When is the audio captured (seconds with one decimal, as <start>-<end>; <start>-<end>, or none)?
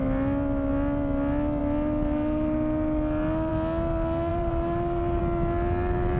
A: 0.0-4.3; 5.2-6.2